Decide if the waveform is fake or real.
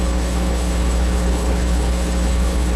fake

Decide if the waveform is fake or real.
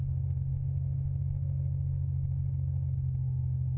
fake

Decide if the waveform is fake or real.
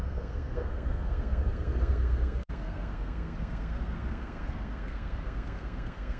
fake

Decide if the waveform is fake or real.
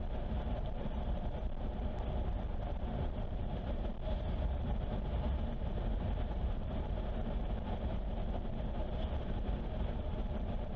fake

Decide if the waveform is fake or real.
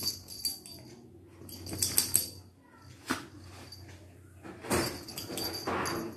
real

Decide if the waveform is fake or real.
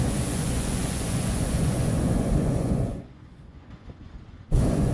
fake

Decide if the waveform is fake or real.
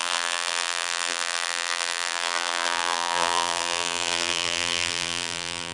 fake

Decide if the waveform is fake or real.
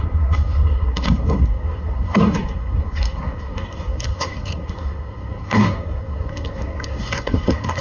fake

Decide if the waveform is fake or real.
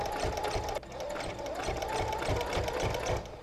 real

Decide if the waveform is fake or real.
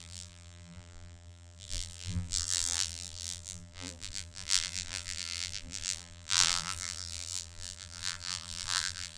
fake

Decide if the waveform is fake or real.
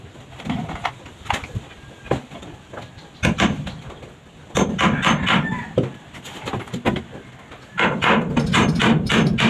real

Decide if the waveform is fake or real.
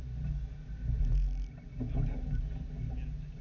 real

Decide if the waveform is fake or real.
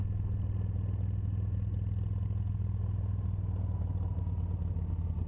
real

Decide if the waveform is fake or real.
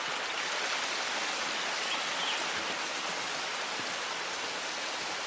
real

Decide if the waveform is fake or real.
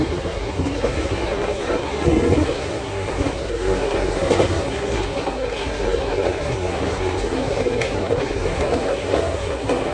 fake